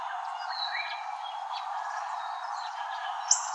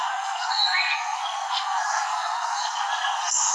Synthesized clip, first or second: second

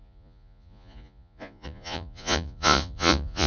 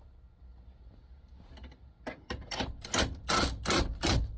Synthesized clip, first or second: first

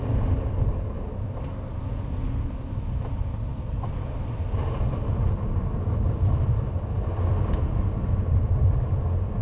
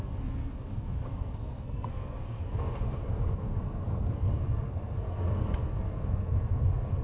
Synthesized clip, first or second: second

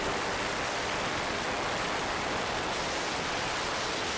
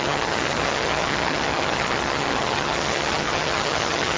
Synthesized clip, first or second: second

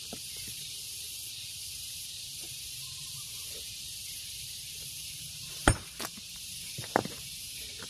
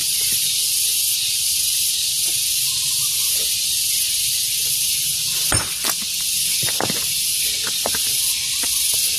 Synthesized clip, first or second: first